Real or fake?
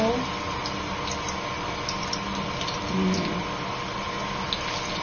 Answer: real